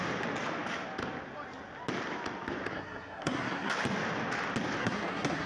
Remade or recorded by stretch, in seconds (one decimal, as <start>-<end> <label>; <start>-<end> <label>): 0.0-2.7 recorded; 2.7-3.7 remade; 3.7-4.8 recorded; 4.8-5.5 remade